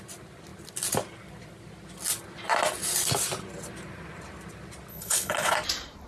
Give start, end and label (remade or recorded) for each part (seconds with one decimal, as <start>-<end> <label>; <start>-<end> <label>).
0.0-4.9 recorded; 4.9-5.5 remade; 5.5-6.1 recorded